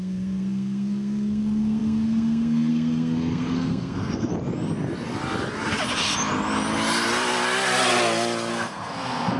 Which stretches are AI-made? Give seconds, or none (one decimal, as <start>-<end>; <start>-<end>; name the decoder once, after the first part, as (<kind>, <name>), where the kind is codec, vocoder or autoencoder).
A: 0.0-4.3 (codec, SNAC); 8.5-9.4